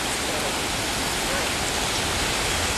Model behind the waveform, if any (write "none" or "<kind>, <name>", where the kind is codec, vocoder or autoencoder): none